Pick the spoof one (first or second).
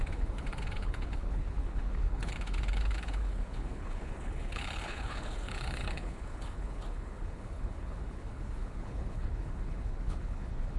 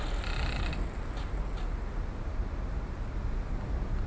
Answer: first